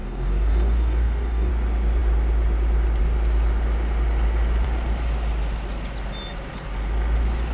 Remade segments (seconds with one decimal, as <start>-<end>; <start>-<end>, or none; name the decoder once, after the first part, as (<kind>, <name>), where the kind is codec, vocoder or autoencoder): 0.0-1.5 (codec, DAC)